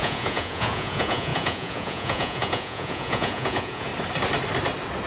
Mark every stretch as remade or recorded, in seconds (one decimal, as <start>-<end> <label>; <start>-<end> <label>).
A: 0.0-3.9 remade; 3.9-5.1 recorded